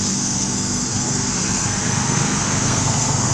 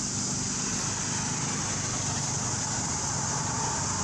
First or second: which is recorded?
second